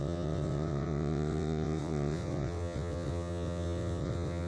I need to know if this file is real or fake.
fake